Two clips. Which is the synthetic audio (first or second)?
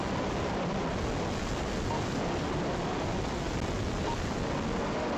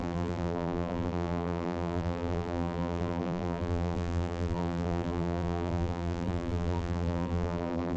second